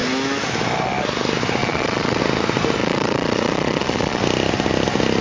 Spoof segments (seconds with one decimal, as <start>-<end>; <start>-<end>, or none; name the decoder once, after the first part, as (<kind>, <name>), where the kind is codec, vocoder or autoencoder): 1.6-2.2 (vocoder, Vocos); 2.8-4.2